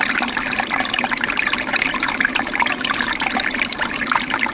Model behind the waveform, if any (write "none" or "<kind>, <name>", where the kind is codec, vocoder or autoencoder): vocoder, BigVGAN v2